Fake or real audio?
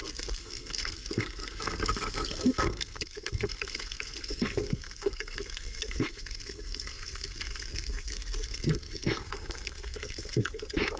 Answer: fake